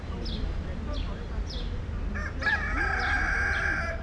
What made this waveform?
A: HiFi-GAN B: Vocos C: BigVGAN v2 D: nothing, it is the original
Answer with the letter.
D